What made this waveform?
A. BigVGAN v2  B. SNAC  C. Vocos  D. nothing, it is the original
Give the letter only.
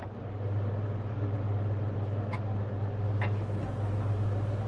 D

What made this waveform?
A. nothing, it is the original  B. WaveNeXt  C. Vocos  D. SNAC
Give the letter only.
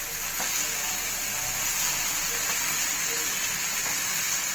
A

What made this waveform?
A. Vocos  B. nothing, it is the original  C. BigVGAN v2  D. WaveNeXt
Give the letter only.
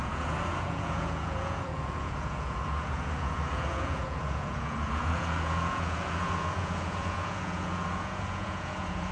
A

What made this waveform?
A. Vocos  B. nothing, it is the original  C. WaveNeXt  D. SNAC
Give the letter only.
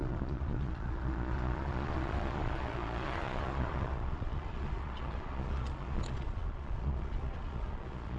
A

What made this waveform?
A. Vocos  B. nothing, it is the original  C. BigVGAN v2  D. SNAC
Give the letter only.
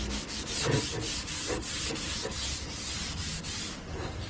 B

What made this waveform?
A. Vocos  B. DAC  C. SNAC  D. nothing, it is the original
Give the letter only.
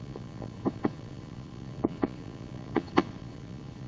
A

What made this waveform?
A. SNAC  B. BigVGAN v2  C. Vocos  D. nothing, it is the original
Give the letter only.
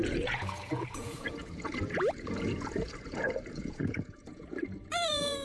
C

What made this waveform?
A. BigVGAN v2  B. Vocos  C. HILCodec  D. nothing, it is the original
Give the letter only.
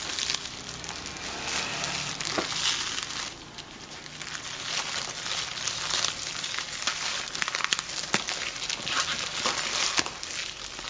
D